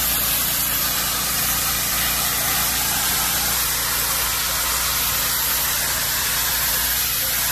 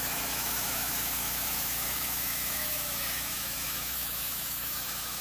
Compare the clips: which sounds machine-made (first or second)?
second